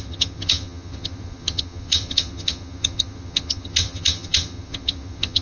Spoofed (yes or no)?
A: yes